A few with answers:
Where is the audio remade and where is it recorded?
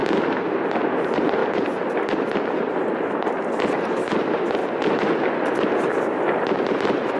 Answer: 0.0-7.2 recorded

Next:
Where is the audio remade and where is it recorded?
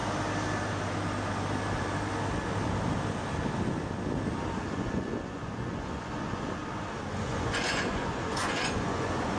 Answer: 0.0-4.7 recorded; 4.7-6.6 remade; 6.6-7.1 recorded; 7.1-9.4 remade